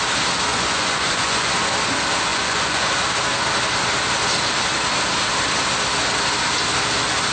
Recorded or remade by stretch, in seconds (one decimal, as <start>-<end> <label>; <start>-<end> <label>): 0.0-0.5 recorded; 0.5-1.5 remade; 1.5-2.3 recorded; 2.3-2.9 remade; 2.9-7.3 recorded